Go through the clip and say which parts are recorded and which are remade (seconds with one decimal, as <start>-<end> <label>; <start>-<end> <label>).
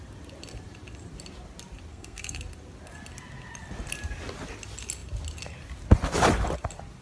0.0-1.9 recorded; 1.9-2.4 remade; 2.4-7.0 recorded